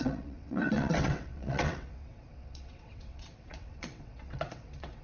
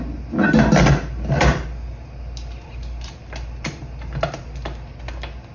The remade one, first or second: first